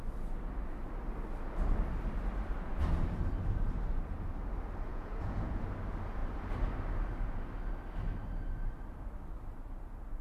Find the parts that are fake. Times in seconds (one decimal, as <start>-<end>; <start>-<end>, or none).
4.9-5.6